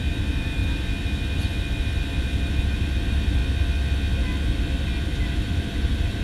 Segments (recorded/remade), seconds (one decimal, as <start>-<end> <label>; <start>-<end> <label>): 0.0-0.6 remade; 0.6-2.2 recorded; 2.2-3.4 remade; 3.4-5.2 recorded; 5.2-6.2 remade